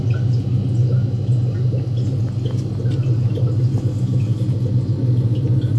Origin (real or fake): real